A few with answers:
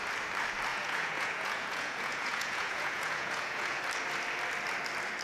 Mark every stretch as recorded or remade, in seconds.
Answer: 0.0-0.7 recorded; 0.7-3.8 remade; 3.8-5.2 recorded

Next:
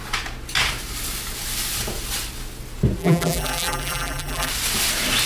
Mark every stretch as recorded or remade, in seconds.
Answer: 0.0-3.0 recorded; 3.0-4.5 remade; 4.5-5.3 recorded

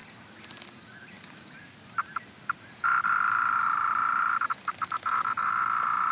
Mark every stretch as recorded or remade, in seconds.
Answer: 0.0-2.9 remade; 2.9-3.6 recorded; 3.6-6.1 remade

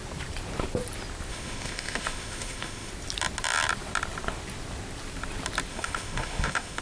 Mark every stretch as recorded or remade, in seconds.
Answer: 0.0-1.3 recorded; 1.3-2.9 remade; 2.9-5.7 recorded; 5.7-6.8 remade

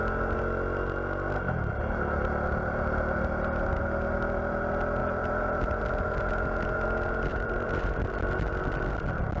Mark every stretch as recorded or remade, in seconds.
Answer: 0.0-5.0 recorded; 5.0-5.8 remade; 5.8-7.3 recorded; 7.3-8.1 remade; 8.1-9.4 recorded

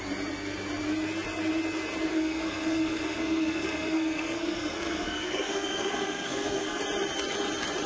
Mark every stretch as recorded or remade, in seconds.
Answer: 0.0-2.1 recorded; 2.1-6.8 remade; 6.8-7.9 recorded

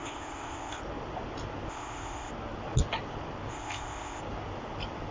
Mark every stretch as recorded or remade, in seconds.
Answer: 0.0-0.8 remade; 0.8-1.7 recorded; 1.7-2.3 remade; 2.3-3.5 recorded; 3.5-4.2 remade; 4.2-5.1 recorded

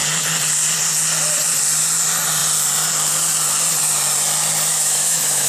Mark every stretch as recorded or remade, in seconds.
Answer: 0.0-4.7 recorded; 4.7-5.5 remade